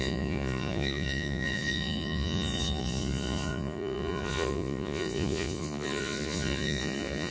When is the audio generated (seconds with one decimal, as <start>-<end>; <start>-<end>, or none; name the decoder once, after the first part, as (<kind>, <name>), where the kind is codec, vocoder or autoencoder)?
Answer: 0.0-7.3 (vocoder, Vocos)